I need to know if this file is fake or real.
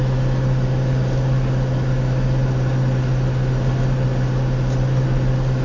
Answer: real